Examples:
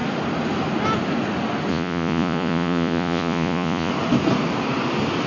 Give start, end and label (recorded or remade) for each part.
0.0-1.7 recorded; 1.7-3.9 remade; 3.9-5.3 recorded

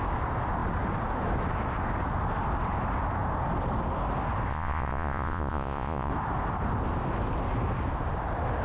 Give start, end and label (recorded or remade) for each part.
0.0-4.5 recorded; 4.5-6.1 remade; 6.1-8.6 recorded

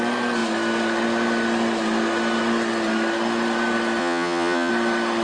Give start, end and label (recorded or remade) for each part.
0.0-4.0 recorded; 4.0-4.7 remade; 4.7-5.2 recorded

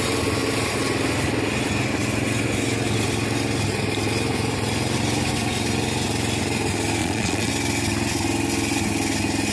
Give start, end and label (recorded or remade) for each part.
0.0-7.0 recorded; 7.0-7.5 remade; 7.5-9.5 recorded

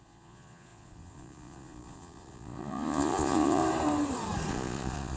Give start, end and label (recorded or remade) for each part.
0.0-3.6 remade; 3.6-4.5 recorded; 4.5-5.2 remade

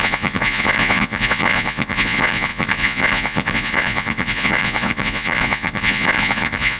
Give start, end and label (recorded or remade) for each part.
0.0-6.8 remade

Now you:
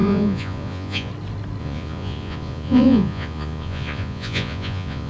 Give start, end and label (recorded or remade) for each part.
0.0-1.1 remade; 1.1-1.6 recorded; 1.6-5.1 remade

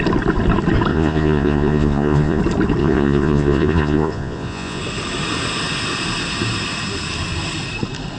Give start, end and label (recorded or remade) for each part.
0.0-0.9 recorded; 0.9-2.4 remade; 2.4-2.8 recorded; 2.8-4.8 remade; 4.8-8.2 recorded